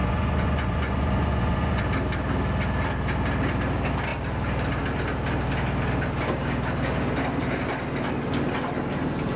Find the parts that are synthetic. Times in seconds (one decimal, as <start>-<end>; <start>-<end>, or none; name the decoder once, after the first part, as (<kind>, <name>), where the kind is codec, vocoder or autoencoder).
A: 0.0-1.8 (vocoder, Vocos)